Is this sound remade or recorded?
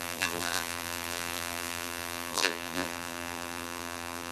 remade